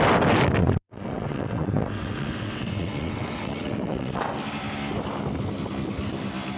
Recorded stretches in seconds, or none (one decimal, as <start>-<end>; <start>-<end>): 0.0-0.6; 4.2-6.6